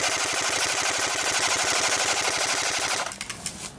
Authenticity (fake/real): real